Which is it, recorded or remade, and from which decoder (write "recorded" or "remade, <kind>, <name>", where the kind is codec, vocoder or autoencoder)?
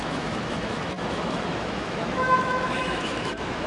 remade, autoencoder, DAC-VAE